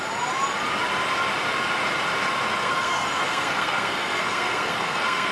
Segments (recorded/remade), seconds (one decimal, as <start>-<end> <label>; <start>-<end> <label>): 0.0-2.6 recorded; 2.6-5.3 remade